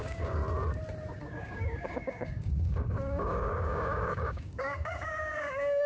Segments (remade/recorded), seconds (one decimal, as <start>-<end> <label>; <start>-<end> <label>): 0.0-0.4 remade; 0.4-1.1 recorded; 1.1-5.9 remade